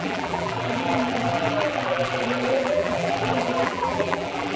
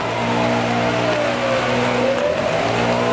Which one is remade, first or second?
first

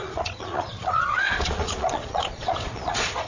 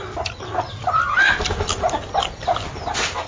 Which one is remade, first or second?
first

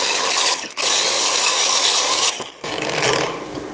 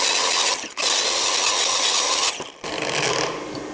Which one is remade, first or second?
first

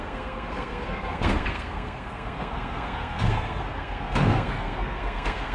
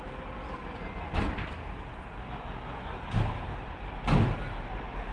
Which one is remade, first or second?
first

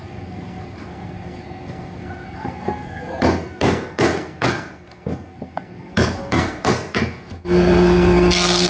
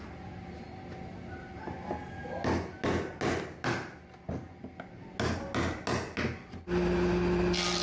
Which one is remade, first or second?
first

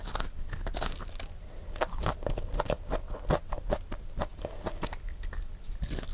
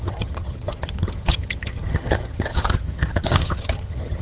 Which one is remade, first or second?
second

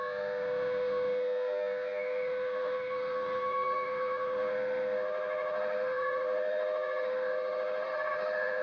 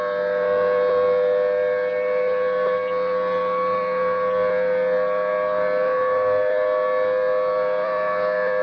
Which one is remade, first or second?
first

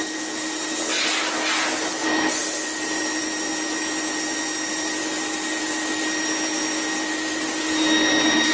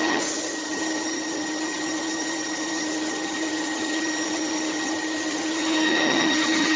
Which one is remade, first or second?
second